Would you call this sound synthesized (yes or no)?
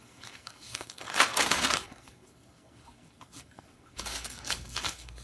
yes